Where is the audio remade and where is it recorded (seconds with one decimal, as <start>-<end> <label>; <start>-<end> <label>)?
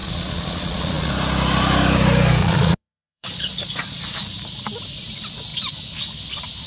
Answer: 0.0-1.1 remade; 1.1-2.4 recorded; 2.4-4.0 remade; 4.0-6.7 recorded